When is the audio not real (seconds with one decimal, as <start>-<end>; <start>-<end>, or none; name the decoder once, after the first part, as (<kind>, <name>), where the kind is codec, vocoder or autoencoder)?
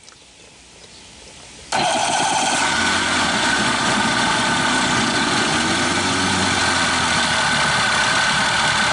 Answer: 2.0-6.6 (vocoder, Vocos)